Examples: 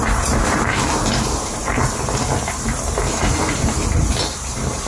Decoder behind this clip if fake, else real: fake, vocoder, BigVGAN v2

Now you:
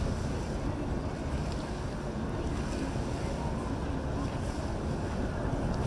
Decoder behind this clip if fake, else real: real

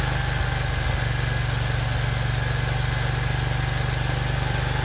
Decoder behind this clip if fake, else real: real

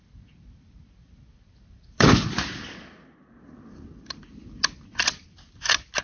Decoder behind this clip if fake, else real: fake, vocoder, BigVGAN v2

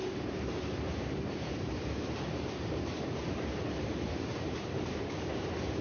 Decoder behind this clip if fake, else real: fake, vocoder, BigVGAN v2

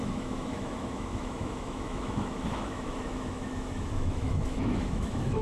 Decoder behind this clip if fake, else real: fake, autoencoder, DAC-VAE